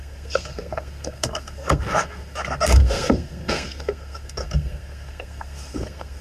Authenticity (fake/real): fake